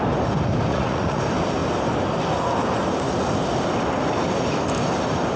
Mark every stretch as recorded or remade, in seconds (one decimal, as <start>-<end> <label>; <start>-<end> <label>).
0.0-0.7 recorded; 0.7-1.2 remade; 1.2-5.4 recorded